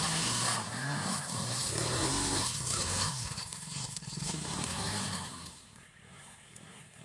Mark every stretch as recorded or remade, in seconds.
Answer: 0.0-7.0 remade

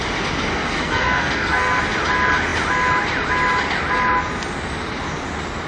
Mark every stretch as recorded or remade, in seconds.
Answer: 0.0-0.5 recorded; 0.5-1.8 remade; 1.8-5.7 recorded

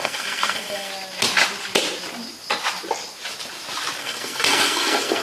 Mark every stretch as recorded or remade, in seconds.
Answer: 0.0-0.9 remade; 0.9-4.0 recorded; 4.0-5.2 remade

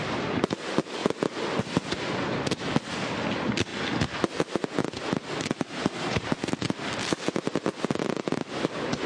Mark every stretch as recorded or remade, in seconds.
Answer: 0.0-9.1 recorded

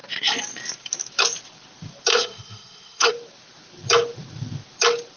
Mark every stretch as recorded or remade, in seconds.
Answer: 0.0-2.1 recorded; 2.1-3.1 remade; 3.1-5.2 recorded

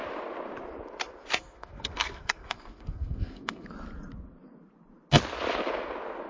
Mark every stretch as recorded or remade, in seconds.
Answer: 0.0-1.4 recorded; 1.4-3.7 remade; 3.7-6.3 recorded